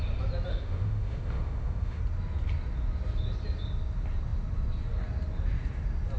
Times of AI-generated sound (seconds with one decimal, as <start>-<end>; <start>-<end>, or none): 0.5-2.0